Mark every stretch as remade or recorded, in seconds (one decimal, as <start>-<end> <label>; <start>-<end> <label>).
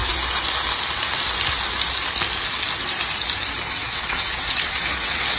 0.0-3.8 recorded; 3.8-5.4 remade